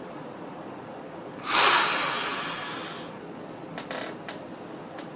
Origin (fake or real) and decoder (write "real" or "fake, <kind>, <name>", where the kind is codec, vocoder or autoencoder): real